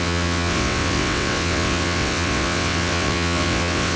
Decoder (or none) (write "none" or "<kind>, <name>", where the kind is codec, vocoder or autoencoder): vocoder, WaveNeXt